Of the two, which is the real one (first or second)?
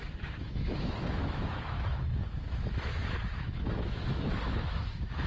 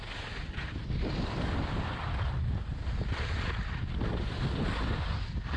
second